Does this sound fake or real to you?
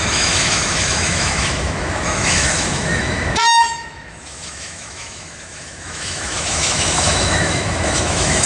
fake